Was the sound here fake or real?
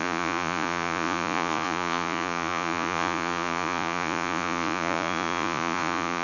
fake